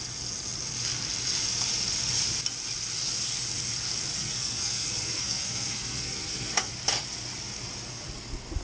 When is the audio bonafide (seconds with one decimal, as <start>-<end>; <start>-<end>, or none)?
0.0-4.2; 6.7-8.6